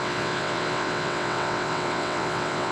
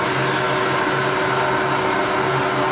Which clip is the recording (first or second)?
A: second